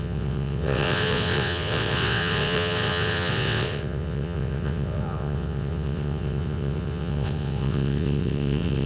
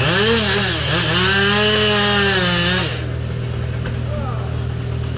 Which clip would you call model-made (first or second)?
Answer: first